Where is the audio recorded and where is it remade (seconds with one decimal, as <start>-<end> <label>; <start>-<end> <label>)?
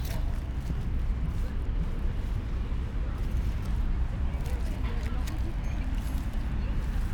0.0-3.2 recorded; 3.2-3.7 remade; 3.7-7.1 recorded